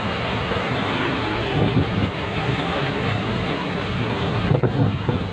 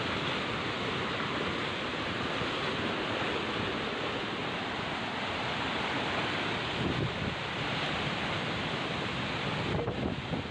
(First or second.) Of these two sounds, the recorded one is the second